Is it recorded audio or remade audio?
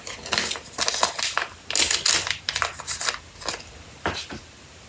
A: recorded